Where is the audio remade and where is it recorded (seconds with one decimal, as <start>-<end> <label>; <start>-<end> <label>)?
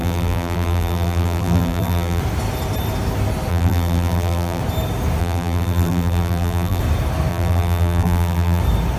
0.0-2.2 remade; 2.2-3.5 recorded; 3.5-4.6 remade; 4.6-5.2 recorded; 5.2-6.8 remade; 6.8-7.3 recorded; 7.3-8.6 remade; 8.6-9.0 recorded